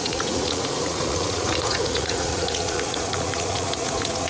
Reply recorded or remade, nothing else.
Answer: remade